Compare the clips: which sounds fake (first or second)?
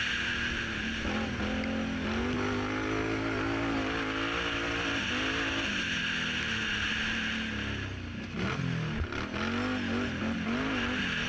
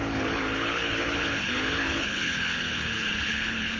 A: second